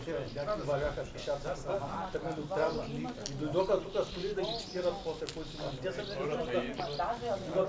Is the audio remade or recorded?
recorded